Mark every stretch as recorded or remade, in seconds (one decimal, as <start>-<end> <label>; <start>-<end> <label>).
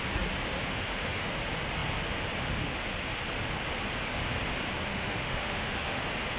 0.0-0.7 recorded; 0.7-1.3 remade; 1.3-4.9 recorded; 4.9-6.0 remade; 6.0-6.4 recorded